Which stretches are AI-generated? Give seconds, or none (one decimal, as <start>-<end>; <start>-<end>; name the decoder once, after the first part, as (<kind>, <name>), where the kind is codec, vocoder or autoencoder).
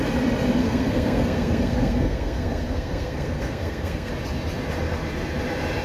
0.6-4.1 (codec, SNAC)